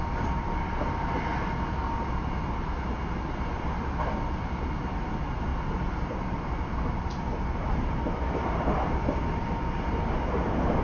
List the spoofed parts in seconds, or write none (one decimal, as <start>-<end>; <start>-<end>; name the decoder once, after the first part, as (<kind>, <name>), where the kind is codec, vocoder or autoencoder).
none